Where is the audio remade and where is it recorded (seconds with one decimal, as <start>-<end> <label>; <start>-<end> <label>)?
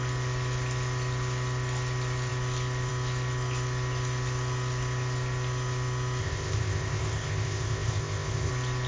0.0-6.2 recorded; 6.2-8.5 remade; 8.5-8.9 recorded